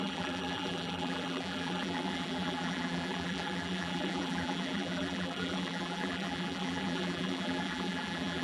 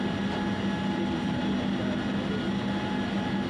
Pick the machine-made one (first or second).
first